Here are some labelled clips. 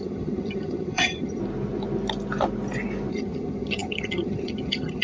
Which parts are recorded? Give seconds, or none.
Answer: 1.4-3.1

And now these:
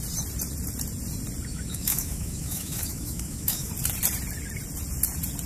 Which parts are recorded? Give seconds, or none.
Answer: 0.0-1.5; 3.7-5.5

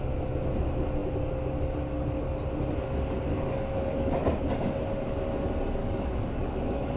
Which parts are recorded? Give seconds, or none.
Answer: 0.0-3.3; 4.5-5.8

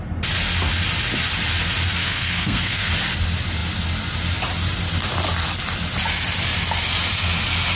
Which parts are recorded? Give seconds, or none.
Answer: 0.0-2.0; 2.9-7.8

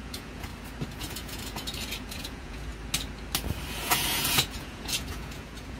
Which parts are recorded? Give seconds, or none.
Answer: 0.5-1.0; 2.7-3.7

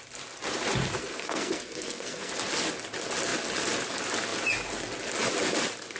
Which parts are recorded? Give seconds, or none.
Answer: 0.0-1.0; 2.3-6.0